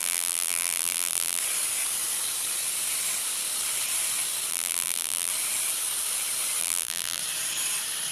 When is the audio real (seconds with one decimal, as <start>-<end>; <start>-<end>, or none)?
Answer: 1.4-4.5; 5.3-6.6; 7.2-8.1